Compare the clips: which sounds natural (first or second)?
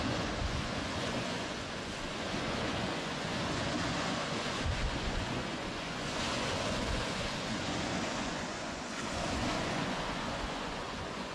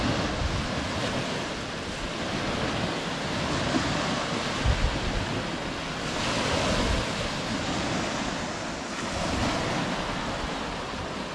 second